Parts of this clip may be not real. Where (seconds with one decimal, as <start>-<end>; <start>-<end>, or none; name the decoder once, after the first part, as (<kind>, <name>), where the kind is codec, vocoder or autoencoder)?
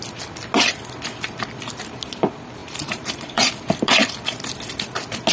2.6-3.5 (vocoder, BigVGAN v2)